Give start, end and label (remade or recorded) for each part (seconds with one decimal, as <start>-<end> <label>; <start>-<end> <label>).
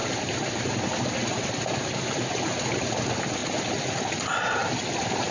0.0-5.3 recorded